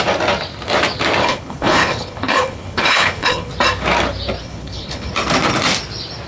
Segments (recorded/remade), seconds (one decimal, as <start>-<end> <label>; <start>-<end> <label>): 0.0-1.2 recorded; 1.2-3.5 remade; 3.5-4.4 recorded; 4.4-5.1 remade; 5.1-6.3 recorded